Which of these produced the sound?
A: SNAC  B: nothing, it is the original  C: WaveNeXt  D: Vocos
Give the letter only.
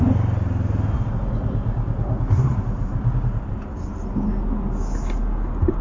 B